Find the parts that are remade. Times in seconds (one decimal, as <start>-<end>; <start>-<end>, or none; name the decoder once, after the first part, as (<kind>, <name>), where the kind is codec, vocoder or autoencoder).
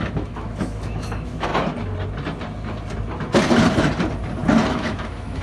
0.0-1.5 (autoencoder, DAC-VAE); 4.7-5.4